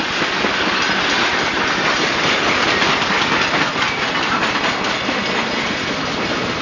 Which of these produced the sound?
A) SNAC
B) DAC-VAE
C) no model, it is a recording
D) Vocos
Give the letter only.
C